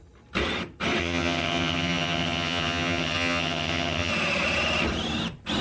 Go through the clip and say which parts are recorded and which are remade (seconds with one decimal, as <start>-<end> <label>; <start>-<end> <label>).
0.0-1.0 recorded; 1.0-4.1 remade; 4.1-5.6 recorded